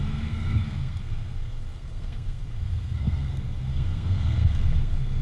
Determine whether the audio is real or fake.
fake